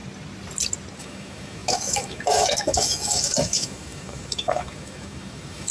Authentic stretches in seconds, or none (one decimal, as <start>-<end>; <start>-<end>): 0.0-1.0